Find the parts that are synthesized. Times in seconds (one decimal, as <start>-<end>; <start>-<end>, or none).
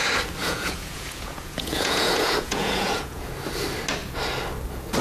0.4-3.3